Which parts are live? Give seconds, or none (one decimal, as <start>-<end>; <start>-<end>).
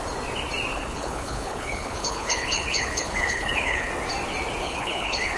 0.0-0.7; 3.9-4.6